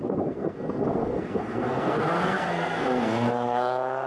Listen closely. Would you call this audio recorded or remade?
remade